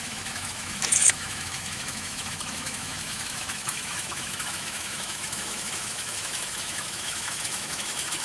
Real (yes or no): no